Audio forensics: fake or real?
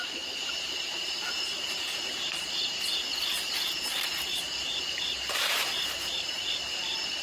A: fake